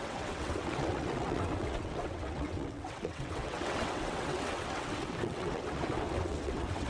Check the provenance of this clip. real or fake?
fake